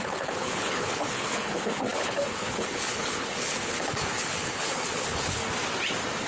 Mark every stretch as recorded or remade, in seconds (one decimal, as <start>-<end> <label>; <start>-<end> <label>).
0.0-5.4 remade; 5.4-6.3 recorded